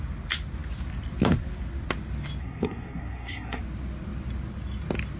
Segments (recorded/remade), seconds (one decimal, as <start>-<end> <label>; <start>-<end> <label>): 0.0-2.4 recorded; 2.4-3.6 remade; 3.6-5.2 recorded